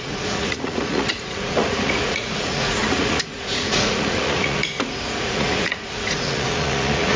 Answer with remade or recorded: remade